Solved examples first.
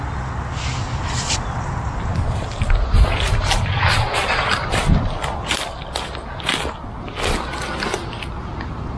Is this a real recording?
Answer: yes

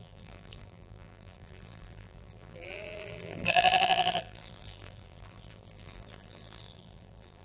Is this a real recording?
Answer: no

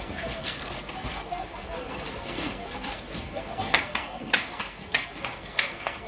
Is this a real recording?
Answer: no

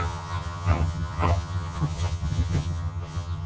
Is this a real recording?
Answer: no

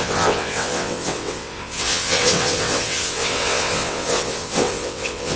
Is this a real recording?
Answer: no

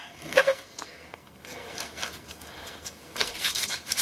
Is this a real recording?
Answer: no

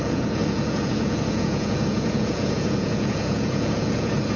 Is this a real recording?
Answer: no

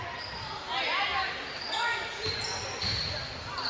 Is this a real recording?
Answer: yes